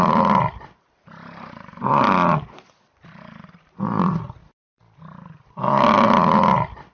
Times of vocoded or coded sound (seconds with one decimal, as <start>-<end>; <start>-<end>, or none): 0.0-4.4; 6.5-6.9